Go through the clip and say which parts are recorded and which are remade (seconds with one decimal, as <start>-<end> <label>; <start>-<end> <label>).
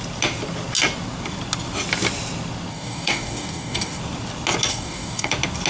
0.0-2.7 recorded; 2.7-4.0 remade; 4.0-4.7 recorded; 4.7-5.3 remade; 5.3-5.7 recorded